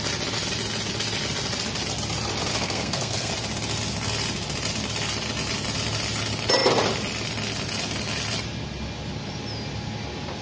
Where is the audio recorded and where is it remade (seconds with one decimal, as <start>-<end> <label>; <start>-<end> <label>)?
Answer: 0.0-2.5 recorded; 2.5-3.3 remade; 3.3-10.4 recorded